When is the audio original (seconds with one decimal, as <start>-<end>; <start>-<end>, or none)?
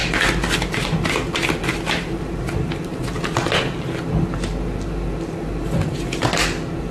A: none